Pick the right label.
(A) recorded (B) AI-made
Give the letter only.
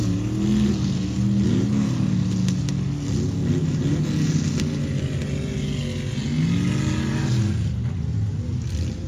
A